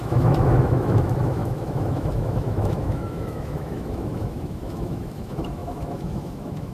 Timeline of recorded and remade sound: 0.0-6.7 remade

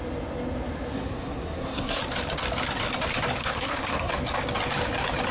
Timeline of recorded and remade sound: 0.0-0.9 recorded; 0.9-2.0 remade; 2.0-3.4 recorded; 3.4-4.1 remade; 4.1-5.3 recorded

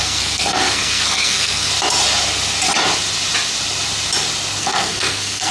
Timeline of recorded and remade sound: 0.0-1.7 remade; 1.7-4.6 recorded; 4.6-5.5 remade

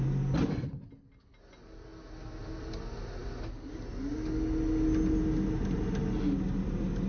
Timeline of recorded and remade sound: 0.0-7.1 recorded

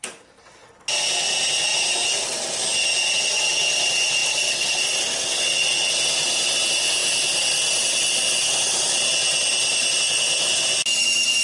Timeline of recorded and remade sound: 0.0-4.2 recorded; 4.2-5.8 remade; 5.8-11.4 recorded

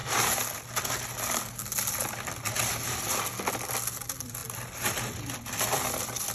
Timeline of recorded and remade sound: 0.0-3.8 recorded; 3.8-4.4 remade; 4.4-5.2 recorded; 5.2-6.3 remade

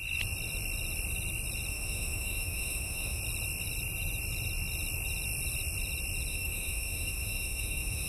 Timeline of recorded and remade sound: 0.0-1.7 recorded; 1.7-3.2 remade; 3.2-6.3 recorded; 6.3-8.1 remade

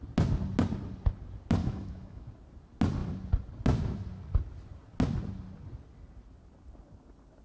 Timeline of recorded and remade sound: 0.0-1.6 recorded; 1.6-2.3 remade; 2.3-7.4 recorded